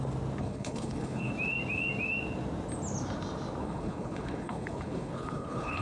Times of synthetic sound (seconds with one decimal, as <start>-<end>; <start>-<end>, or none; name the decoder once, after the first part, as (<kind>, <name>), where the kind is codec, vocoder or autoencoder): 0.4-1.3 (codec, HILCodec); 3.6-5.8